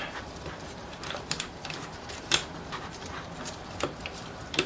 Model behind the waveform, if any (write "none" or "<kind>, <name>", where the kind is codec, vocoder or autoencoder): vocoder, BigVGAN v2